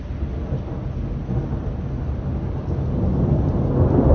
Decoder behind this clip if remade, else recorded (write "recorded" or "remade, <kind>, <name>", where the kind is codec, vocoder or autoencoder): recorded